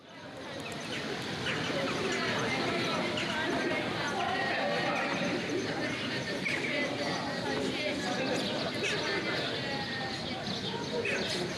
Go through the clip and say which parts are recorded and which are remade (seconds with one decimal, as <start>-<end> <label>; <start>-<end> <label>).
0.0-5.1 recorded; 5.1-6.4 remade; 6.4-11.6 recorded

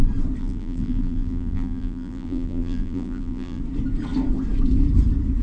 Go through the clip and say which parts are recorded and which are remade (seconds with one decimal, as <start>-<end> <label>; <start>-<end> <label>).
0.0-0.4 recorded; 0.4-3.6 remade; 3.6-5.4 recorded

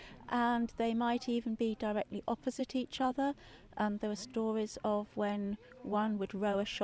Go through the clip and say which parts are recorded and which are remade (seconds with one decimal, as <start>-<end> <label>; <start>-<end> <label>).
0.0-1.2 recorded; 1.2-4.3 remade; 4.3-5.1 recorded; 5.1-6.8 remade

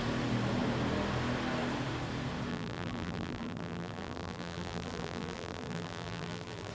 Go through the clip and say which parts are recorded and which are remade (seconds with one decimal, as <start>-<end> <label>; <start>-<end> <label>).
0.0-2.5 recorded; 2.5-6.7 remade

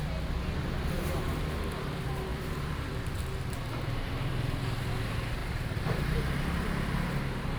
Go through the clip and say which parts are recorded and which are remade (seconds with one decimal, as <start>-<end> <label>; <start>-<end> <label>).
0.0-2.3 recorded; 2.3-3.0 remade; 3.0-5.4 recorded; 5.4-7.1 remade; 7.1-7.6 recorded

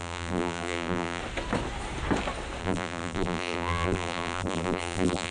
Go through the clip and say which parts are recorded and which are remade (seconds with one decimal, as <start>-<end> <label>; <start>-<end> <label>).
0.0-1.2 remade; 1.2-2.6 recorded; 2.6-5.3 remade

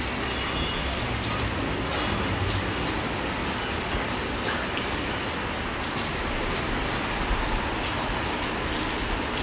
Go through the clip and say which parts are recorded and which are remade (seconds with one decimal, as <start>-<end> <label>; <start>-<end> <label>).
0.0-3.4 recorded; 3.4-4.1 remade; 4.1-9.4 recorded

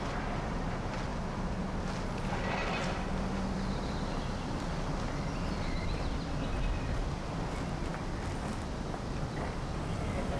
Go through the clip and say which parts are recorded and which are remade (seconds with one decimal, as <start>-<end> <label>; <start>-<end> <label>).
0.0-10.4 recorded